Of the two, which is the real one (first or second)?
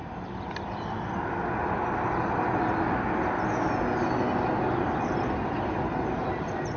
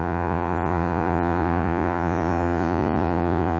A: first